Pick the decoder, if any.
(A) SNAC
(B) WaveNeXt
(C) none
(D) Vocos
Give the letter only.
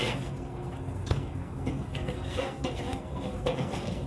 A